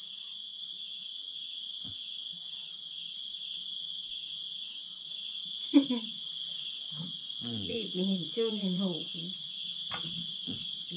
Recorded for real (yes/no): no